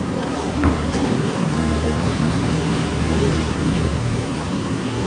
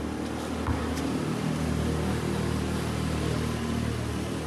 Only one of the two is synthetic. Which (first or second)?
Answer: first